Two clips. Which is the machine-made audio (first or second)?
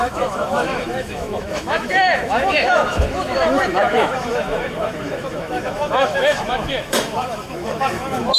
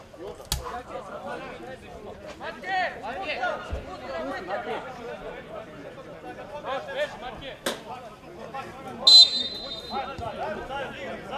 first